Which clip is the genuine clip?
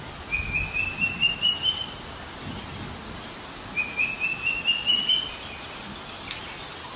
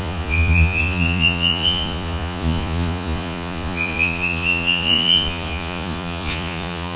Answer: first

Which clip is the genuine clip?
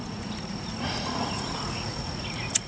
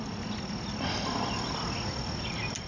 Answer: second